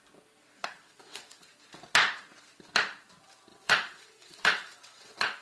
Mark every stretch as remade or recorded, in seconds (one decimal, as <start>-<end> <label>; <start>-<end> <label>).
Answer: 0.0-0.6 recorded; 0.6-1.5 remade; 1.5-3.5 recorded; 3.5-5.4 remade